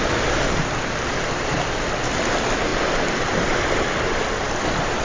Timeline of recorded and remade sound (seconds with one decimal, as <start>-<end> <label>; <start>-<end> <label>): 0.0-5.0 recorded